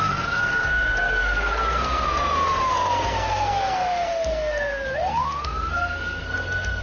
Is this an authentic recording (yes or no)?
no